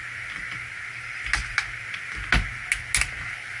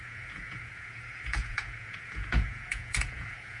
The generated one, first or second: second